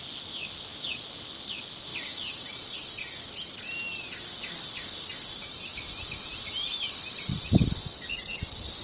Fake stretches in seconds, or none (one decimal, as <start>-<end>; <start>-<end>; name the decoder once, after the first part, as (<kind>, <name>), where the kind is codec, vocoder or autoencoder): none